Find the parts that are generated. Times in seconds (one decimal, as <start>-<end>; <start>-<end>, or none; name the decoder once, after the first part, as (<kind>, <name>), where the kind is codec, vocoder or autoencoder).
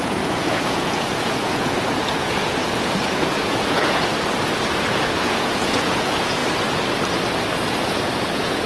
0.0-4.1 (vocoder, Vocos); 4.8-6.4; 7.8-8.7